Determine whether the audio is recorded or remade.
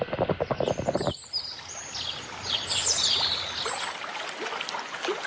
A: recorded